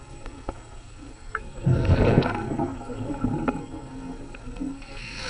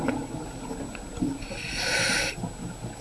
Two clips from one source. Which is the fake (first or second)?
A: first